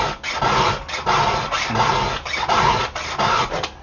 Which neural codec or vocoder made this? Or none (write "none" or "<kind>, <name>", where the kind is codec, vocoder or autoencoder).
none